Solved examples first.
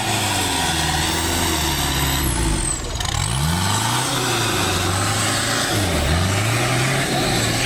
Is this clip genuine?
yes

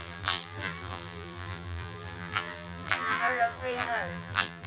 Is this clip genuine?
no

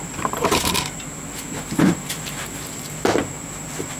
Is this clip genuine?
no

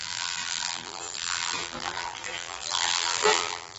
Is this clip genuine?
no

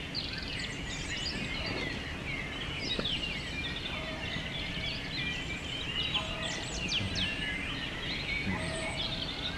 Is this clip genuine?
yes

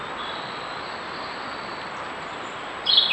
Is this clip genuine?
no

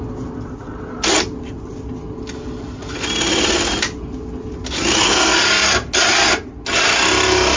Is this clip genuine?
yes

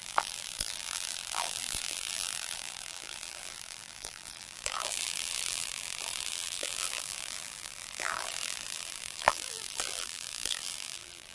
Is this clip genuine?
no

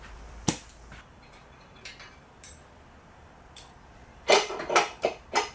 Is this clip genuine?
no